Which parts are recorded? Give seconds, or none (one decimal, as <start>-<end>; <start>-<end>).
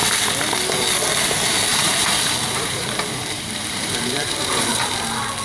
0.0-1.7; 4.9-5.4